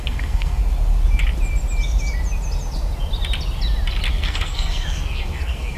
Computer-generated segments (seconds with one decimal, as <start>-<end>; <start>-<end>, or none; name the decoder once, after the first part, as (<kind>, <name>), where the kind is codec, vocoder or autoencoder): 0.0-0.6 (codec, SNAC); 4.1-5.8